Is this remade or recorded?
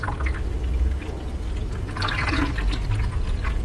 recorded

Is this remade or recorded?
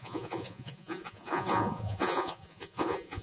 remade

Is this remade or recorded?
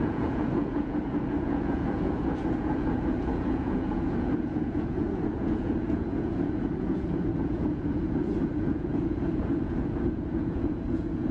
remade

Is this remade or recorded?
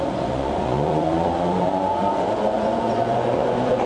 remade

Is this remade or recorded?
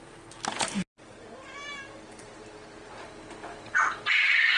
recorded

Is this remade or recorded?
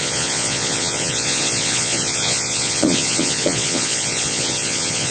remade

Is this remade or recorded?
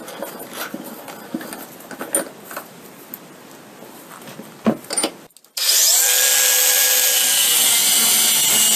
recorded